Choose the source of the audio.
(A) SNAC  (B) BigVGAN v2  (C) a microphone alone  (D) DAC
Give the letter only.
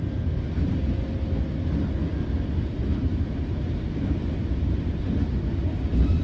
C